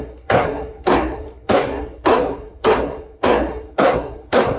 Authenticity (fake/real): fake